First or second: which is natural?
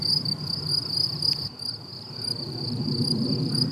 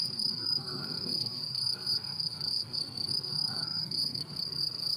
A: first